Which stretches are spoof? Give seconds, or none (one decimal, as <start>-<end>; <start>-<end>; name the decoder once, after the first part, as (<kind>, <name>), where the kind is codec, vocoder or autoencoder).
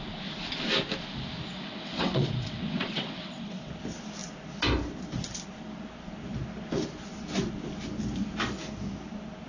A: 1.5-3.7 (vocoder, WaveNeXt)